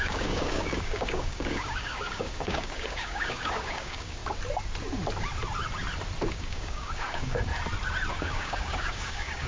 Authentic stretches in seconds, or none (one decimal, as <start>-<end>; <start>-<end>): 4.2-6.3; 7.5-8.1